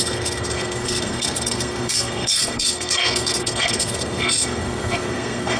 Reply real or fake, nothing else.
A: fake